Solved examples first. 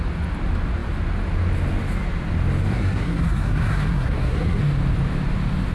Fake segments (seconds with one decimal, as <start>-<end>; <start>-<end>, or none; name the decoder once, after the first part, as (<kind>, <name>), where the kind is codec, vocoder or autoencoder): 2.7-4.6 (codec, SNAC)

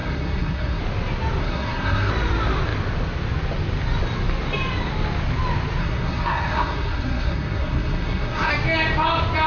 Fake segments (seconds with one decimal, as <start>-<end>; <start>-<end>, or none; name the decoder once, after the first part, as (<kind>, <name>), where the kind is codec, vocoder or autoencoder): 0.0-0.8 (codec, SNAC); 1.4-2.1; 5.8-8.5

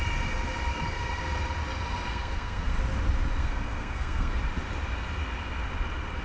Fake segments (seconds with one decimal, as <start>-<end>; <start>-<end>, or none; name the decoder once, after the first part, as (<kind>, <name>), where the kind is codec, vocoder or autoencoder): 0.7-1.2 (codec, SNAC); 2.1-2.7; 3.4-4.4

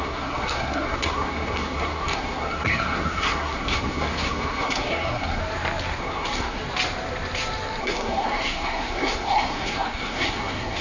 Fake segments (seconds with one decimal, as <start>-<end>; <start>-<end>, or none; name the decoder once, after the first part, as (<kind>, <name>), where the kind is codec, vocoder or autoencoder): 0.0-5.4 (codec, SNAC); 6.0-6.6; 7.8-10.8

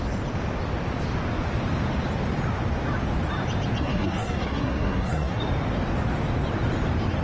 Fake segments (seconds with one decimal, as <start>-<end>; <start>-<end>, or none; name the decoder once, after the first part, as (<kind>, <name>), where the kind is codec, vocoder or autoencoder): 3.8-5.4 (codec, SNAC)

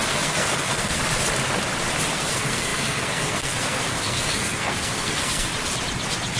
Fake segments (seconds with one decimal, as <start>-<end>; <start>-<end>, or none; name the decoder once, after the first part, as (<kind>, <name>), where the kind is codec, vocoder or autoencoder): 0.0-1.0 (codec, SNAC); 2.1-5.5

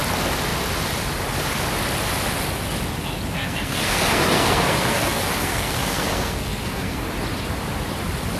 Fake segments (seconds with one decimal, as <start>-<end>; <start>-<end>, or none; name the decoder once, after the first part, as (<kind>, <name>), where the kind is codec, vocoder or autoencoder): 3.3-7.1 (codec, SNAC)